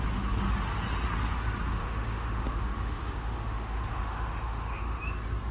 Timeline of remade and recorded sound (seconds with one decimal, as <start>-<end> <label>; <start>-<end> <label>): 0.0-1.7 recorded; 1.7-5.0 remade; 5.0-5.5 recorded